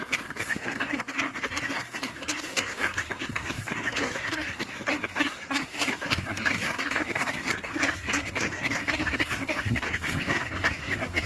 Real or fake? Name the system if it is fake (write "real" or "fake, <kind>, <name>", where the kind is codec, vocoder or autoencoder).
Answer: fake, codec, SNAC